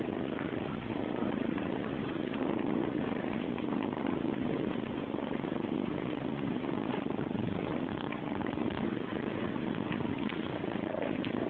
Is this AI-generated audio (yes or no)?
yes